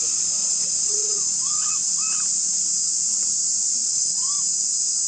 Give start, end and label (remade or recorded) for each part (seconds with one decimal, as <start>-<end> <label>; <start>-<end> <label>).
0.0-0.4 recorded; 0.4-2.0 remade; 2.0-3.8 recorded; 3.8-4.3 remade; 4.3-5.1 recorded